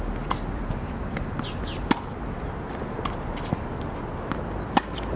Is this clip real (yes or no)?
yes